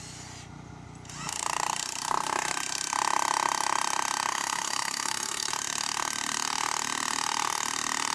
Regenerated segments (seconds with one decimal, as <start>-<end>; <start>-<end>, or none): 4.3-5.5